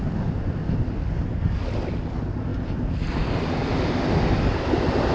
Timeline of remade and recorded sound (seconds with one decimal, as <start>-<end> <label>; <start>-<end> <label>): 0.0-5.1 recorded